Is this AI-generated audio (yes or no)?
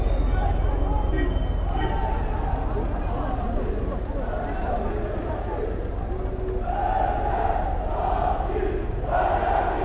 no